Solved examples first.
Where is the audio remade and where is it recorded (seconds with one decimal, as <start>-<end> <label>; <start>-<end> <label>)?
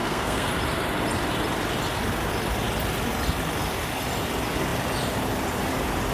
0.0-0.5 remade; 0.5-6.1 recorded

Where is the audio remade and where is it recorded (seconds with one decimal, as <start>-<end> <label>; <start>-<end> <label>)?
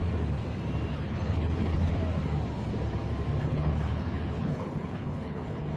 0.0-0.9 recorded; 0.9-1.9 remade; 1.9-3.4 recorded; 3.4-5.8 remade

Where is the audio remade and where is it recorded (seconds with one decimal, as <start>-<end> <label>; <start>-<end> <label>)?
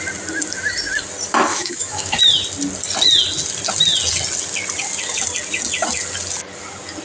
0.0-1.5 recorded; 1.5-2.2 remade; 2.2-7.0 recorded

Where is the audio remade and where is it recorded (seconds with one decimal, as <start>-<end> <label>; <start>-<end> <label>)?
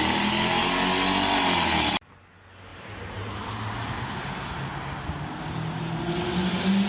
0.0-2.7 recorded; 2.7-4.2 remade; 4.2-6.9 recorded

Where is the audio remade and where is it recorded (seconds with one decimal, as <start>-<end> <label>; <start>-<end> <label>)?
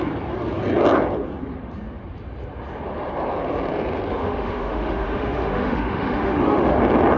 0.0-4.1 recorded; 4.1-6.8 remade; 6.8-7.2 recorded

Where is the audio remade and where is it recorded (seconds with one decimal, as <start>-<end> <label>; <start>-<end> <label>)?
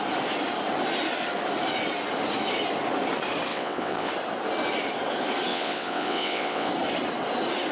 0.0-3.5 recorded; 3.5-4.1 remade; 4.1-5.5 recorded; 5.5-6.7 remade; 6.7-7.7 recorded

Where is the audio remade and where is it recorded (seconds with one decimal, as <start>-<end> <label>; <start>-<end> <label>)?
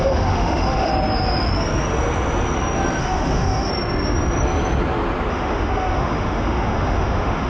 0.0-0.9 remade; 0.9-3.0 recorded; 3.0-3.7 remade; 3.7-5.3 recorded; 5.3-7.5 remade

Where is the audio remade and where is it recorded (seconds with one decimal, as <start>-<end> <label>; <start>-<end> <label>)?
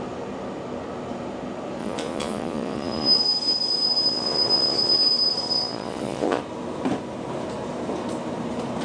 0.0-1.8 recorded; 1.8-6.4 remade; 6.4-8.8 recorded